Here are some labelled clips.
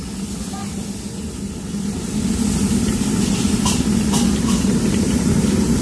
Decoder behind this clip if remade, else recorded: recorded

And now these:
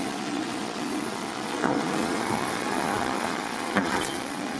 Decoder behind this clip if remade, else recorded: remade, vocoder, Vocos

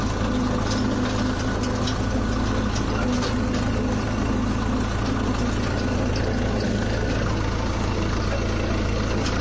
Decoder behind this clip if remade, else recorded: recorded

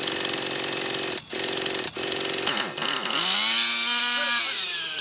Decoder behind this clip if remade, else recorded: recorded